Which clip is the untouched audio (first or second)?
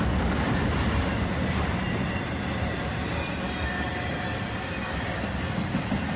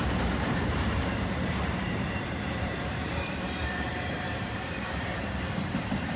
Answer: first